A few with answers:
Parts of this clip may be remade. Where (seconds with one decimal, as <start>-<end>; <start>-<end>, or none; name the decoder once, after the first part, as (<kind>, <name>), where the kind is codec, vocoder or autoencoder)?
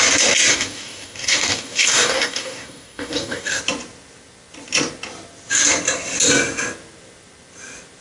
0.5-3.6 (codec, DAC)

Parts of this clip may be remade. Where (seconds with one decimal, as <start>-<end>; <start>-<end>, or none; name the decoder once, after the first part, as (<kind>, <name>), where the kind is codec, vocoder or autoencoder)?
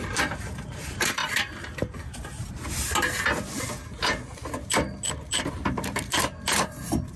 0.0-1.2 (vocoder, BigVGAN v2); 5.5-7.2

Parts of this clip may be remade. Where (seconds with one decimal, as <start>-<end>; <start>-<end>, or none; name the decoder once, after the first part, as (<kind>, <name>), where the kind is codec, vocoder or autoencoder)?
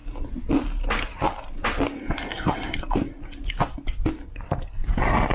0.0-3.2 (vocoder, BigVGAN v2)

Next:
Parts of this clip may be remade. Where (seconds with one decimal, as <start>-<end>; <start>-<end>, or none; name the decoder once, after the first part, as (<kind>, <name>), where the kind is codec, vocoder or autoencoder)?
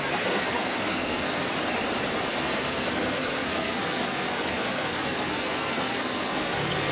0.0-1.4 (codec, SNAC); 2.3-6.9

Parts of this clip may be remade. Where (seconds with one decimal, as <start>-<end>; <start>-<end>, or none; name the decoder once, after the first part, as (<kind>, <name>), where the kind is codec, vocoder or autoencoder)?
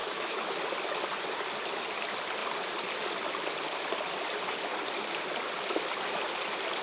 0.0-0.6 (autoencoder, DAC-VAE)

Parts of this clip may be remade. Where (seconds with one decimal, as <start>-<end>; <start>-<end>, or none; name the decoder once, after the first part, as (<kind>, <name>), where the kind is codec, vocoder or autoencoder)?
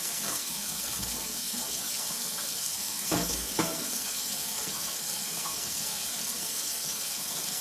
0.0-7.6 (codec, SNAC)